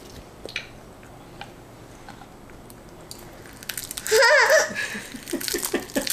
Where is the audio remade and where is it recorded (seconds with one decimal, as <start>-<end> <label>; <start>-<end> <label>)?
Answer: 0.0-6.1 recorded